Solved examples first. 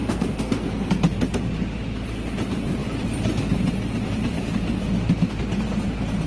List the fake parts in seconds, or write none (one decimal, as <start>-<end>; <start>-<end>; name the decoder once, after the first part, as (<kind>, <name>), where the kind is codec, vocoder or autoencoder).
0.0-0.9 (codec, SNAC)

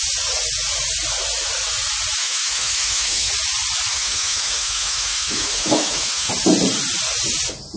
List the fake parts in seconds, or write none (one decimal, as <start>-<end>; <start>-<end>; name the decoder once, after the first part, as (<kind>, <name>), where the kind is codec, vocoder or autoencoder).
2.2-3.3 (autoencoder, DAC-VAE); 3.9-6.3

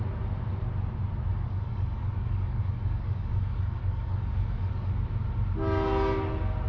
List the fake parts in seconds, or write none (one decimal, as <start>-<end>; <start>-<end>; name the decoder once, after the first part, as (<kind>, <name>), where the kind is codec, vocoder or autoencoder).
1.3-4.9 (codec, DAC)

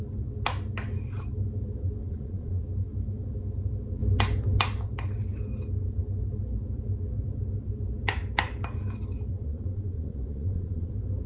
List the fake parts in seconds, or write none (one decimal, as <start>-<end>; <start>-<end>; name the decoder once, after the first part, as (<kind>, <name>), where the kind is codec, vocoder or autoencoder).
2.0-2.6 (vocoder, Vocos); 9.3-10.9